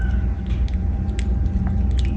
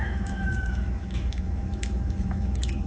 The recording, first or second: first